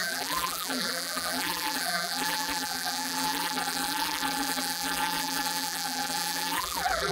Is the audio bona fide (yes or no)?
no